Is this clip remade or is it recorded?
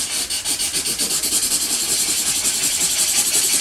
recorded